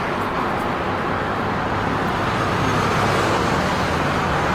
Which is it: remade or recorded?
recorded